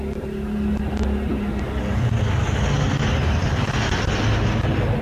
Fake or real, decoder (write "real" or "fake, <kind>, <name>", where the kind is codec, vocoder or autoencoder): real